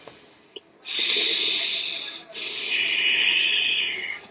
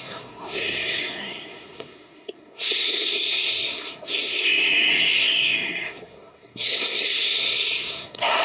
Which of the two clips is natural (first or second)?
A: first